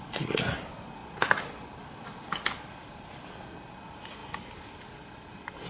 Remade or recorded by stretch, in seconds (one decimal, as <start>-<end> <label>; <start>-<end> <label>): 0.0-5.7 recorded